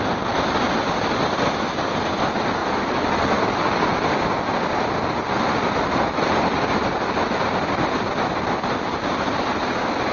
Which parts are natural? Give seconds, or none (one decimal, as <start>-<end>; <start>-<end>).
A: 0.0-10.1